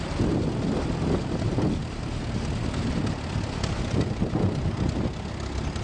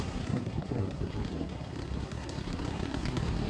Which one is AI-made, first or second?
second